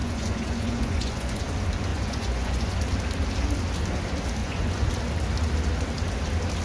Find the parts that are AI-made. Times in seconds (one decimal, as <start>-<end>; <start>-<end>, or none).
0.0-1.4; 1.9-2.8; 4.4-4.9